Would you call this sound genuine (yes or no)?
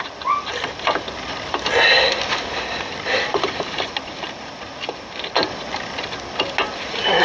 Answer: yes